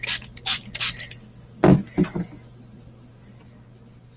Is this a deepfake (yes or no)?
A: no